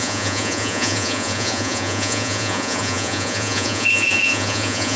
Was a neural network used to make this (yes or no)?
yes